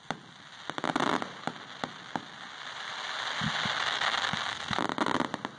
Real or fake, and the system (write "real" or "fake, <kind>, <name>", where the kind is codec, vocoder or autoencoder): real